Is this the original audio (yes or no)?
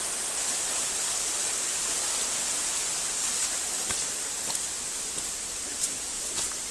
yes